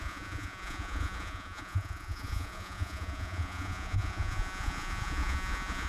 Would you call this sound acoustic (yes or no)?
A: no